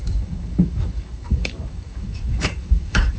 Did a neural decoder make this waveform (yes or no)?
yes